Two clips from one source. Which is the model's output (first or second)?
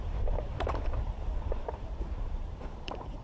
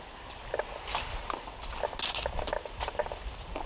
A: first